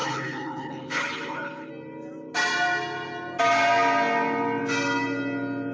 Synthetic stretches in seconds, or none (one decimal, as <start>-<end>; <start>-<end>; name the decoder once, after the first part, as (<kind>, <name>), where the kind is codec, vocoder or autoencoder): 0.0-1.7 (codec, HILCodec)